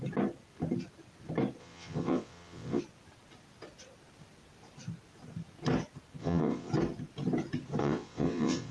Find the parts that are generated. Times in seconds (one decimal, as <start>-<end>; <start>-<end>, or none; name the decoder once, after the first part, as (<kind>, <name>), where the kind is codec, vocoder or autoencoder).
1.6-2.8 (vocoder, WaveNeXt); 6.2-6.7; 7.8-8.7